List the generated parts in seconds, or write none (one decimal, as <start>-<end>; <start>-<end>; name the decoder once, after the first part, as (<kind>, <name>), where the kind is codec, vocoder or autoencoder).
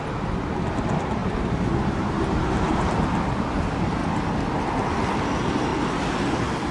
1.2-2.9 (vocoder, BigVGAN v2)